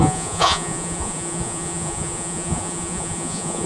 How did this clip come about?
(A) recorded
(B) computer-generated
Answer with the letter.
B